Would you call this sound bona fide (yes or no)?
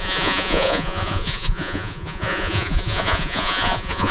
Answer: no